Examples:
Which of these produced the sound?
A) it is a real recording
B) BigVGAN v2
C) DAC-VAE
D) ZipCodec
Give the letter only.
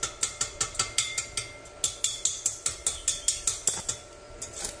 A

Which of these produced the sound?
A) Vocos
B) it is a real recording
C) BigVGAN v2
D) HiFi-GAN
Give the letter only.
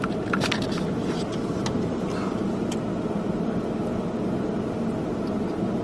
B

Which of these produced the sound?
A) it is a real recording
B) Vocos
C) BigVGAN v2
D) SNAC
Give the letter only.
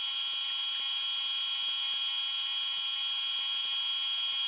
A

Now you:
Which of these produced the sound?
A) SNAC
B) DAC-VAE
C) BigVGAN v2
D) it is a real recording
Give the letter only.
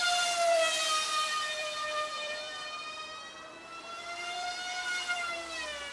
C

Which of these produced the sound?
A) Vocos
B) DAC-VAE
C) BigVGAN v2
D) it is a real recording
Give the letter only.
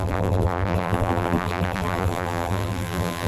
C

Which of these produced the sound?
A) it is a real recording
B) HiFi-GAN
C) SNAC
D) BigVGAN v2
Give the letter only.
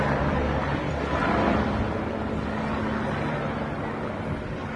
D